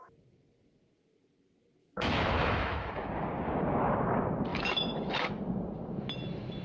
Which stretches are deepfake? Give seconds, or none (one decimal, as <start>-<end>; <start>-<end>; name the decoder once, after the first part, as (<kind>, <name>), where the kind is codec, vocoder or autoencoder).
1.8-3.1 (autoencoder, DAC-VAE); 4.5-5.3